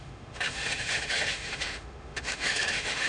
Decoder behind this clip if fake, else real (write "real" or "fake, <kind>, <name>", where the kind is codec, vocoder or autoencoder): fake, autoencoder, DAC-VAE